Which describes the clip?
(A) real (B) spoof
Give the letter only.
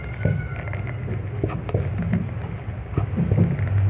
A